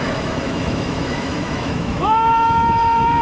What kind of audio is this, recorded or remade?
remade